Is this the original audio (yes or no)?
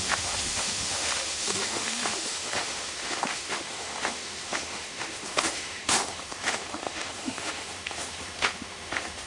no